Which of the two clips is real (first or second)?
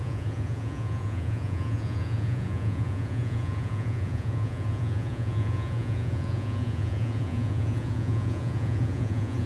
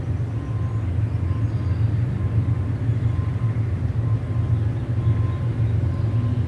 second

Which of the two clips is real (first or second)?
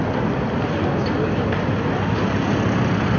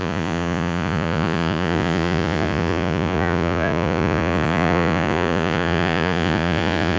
first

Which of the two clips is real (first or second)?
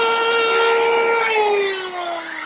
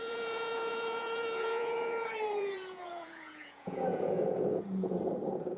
first